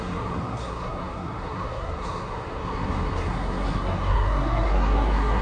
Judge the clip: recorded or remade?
remade